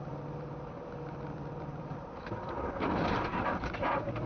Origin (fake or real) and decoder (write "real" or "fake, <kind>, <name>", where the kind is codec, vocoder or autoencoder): fake, vocoder, BigVGAN v2